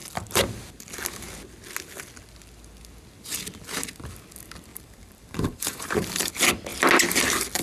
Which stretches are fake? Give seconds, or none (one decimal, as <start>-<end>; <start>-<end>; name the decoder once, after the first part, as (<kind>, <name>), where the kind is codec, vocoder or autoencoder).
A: 4.7-6.3 (vocoder, BigVGAN v2)